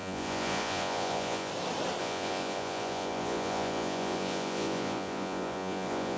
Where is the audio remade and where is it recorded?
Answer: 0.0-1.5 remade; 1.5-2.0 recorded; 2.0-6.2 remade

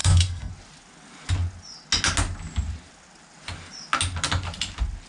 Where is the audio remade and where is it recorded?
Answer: 0.0-0.5 remade; 0.5-5.1 recorded

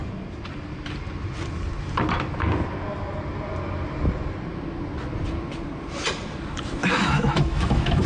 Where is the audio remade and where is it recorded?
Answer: 0.0-6.8 recorded; 6.8-8.1 remade

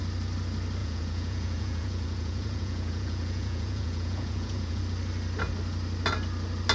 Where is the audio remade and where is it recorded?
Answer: 0.0-0.8 recorded; 0.8-4.8 remade; 4.8-6.7 recorded

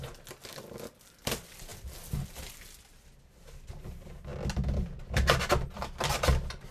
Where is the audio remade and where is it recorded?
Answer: 0.0-6.7 recorded

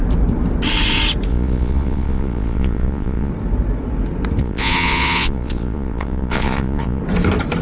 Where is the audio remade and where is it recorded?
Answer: 0.0-1.3 recorded; 1.3-3.3 remade; 3.3-4.4 recorded; 4.4-7.0 remade; 7.0-7.6 recorded

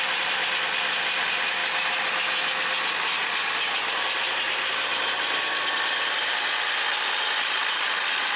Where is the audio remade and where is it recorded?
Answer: 0.0-1.6 remade; 1.6-4.0 recorded; 4.0-4.9 remade; 4.9-5.8 recorded; 5.8-8.4 remade